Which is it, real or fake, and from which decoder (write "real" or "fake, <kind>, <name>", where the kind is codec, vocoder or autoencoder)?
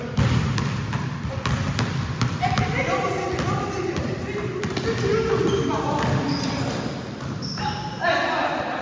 real